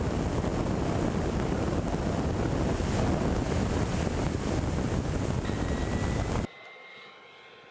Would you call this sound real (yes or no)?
yes